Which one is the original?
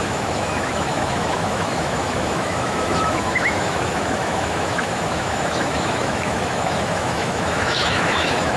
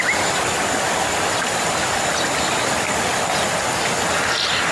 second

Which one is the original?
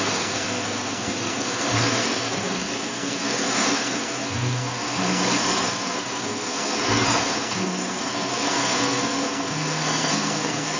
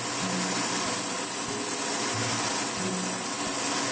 second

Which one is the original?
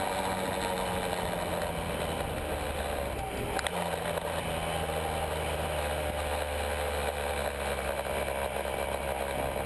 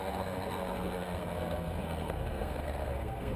first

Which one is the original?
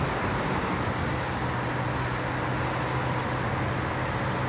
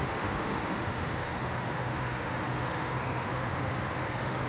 first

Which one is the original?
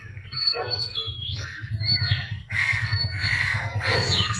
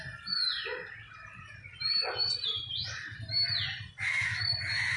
second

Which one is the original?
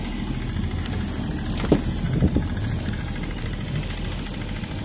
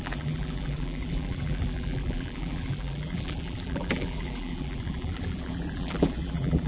first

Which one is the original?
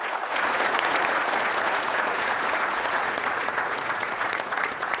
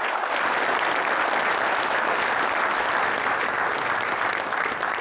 second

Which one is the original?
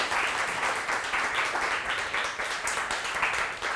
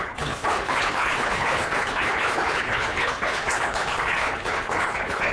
first